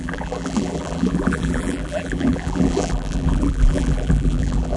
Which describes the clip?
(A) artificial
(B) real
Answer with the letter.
A